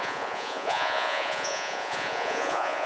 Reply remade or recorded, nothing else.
remade